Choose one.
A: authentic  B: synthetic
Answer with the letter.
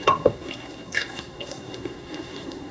B